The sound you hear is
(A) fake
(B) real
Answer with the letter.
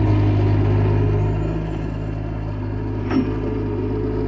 B